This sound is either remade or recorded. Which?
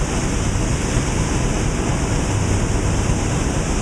recorded